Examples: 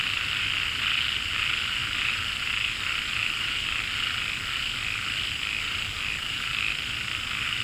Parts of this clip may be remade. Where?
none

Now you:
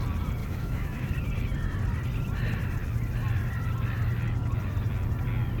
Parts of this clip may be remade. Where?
0.4-1.1 (autoencoder, DAC-VAE)

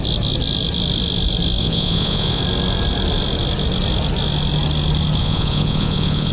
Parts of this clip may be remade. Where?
1.6-2.4 (vocoder, Vocos); 5.2-6.3

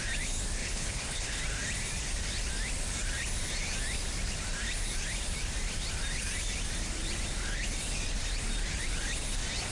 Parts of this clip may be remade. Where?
0.6-1.4 (codec, HILCodec)

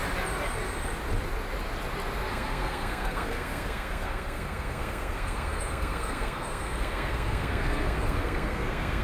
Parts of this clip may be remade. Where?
2.3-9.0 (codec, SNAC)

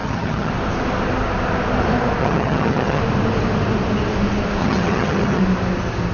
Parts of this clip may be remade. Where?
0.0-0.5 (vocoder, HiFi-GAN); 2.2-3.0; 4.6-5.4